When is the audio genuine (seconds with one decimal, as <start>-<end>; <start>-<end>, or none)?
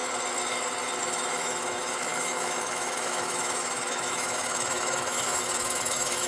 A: 0.0-1.0